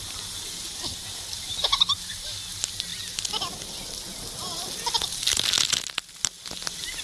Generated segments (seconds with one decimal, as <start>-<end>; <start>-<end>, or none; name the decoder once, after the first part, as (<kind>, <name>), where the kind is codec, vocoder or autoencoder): none